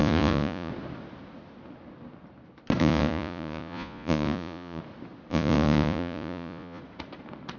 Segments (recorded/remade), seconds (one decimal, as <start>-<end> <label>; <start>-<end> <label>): 0.0-0.7 remade; 0.7-2.8 recorded; 2.8-4.8 remade; 4.8-5.3 recorded; 5.3-6.8 remade; 6.8-7.6 recorded